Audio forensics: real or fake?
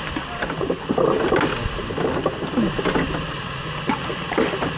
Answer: real